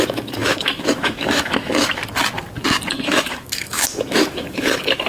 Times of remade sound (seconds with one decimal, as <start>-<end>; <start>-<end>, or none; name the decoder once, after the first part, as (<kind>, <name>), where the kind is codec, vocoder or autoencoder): 0.0-2.0 (autoencoder, DAC-VAE); 2.9-5.1